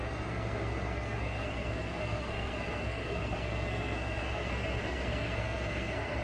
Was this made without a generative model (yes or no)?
no